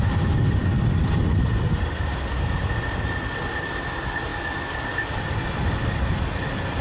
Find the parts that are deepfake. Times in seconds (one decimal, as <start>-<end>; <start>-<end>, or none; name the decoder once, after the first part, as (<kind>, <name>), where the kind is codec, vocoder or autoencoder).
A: none